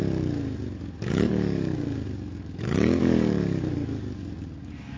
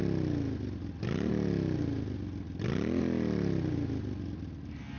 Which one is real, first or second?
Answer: second